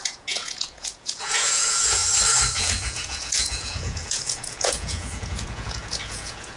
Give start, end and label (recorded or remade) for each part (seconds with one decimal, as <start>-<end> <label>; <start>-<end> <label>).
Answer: 0.0-2.0 remade; 2.0-2.6 recorded; 2.6-6.6 remade